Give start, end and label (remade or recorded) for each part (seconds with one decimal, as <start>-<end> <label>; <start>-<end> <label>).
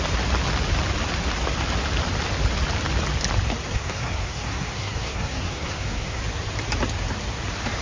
0.0-3.7 recorded; 3.7-6.2 remade; 6.2-7.8 recorded